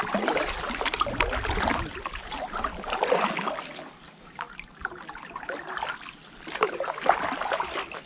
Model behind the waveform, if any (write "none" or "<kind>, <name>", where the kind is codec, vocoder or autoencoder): none